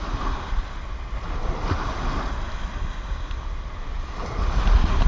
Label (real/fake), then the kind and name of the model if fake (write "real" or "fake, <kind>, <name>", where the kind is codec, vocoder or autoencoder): real